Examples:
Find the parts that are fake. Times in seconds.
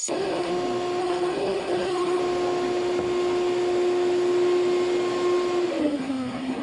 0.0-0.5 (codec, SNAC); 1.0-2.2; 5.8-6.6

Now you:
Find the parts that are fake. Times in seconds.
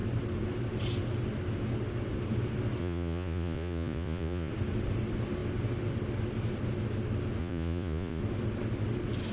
2.8-4.5 (vocoder, Vocos); 7.4-8.2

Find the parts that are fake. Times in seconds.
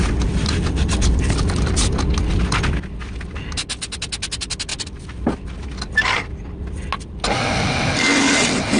none